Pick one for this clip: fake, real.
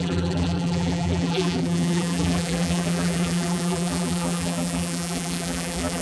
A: fake